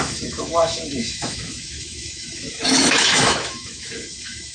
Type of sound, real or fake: fake